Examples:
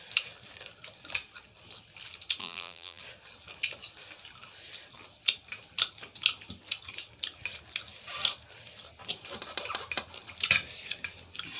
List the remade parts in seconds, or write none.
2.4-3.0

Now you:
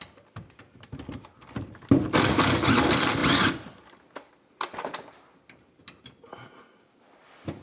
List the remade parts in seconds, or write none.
none

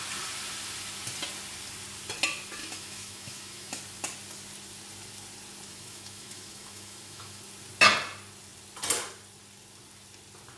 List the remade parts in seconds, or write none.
2.6-3.8; 5.7-7.4

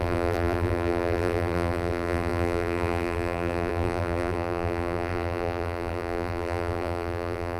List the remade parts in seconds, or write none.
0.0-7.6

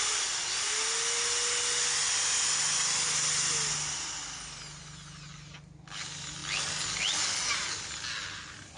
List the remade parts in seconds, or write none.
none